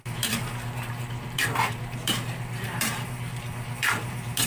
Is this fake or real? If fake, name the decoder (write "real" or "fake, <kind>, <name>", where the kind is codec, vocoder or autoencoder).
fake, vocoder, BigVGAN v2